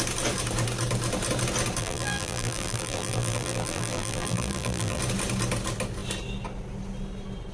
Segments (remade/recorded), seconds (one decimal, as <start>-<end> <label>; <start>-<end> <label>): 0.0-1.8 recorded; 1.8-5.0 remade; 5.0-7.5 recorded